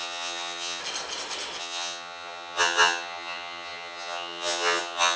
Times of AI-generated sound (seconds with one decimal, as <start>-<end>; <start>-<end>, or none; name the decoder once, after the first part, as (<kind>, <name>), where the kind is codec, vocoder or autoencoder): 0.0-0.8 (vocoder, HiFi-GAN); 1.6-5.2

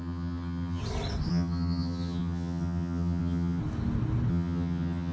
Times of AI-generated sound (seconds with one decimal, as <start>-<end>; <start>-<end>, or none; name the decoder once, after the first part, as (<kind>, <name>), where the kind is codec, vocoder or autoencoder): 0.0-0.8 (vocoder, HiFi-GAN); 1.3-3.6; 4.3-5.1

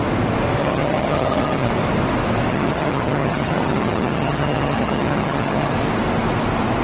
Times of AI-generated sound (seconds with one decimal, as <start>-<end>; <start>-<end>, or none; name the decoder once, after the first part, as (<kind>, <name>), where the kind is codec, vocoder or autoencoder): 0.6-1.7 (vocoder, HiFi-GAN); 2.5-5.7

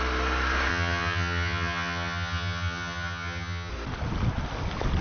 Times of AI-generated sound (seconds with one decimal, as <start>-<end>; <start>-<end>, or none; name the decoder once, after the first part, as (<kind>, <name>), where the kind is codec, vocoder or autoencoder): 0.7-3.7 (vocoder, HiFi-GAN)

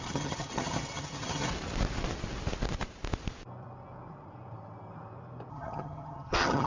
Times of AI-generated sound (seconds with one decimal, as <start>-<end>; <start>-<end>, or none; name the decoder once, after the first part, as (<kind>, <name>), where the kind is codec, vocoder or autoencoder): 0.0-1.5 (vocoder, HiFi-GAN); 5.5-6.7

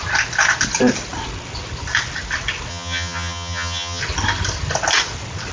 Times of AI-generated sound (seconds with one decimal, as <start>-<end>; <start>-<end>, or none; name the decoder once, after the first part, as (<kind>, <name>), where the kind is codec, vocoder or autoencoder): 2.7-4.0 (vocoder, HiFi-GAN)